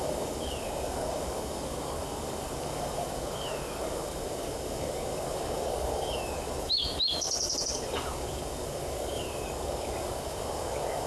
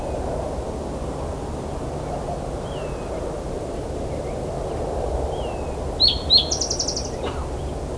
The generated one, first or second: first